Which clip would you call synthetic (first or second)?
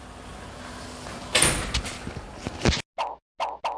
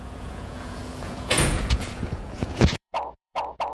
second